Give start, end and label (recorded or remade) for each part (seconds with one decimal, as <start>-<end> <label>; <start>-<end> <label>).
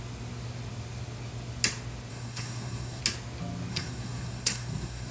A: 0.0-2.1 recorded; 2.1-3.0 remade; 3.0-3.7 recorded; 3.7-5.1 remade